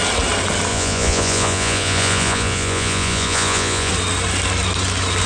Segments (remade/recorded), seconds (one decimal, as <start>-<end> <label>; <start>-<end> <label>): 0.0-0.7 recorded; 0.7-3.9 remade; 3.9-5.3 recorded